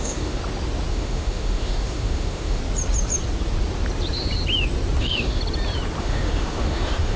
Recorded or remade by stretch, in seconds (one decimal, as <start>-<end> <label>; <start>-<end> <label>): 0.0-0.4 remade; 0.4-0.9 recorded; 0.9-2.6 remade; 2.6-5.0 recorded; 5.0-5.4 remade; 5.4-6.0 recorded; 6.0-7.2 remade